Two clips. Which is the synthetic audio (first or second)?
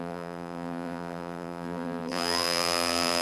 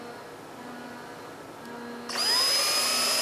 first